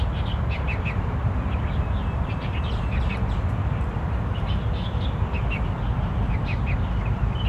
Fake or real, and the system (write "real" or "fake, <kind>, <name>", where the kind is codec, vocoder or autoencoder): real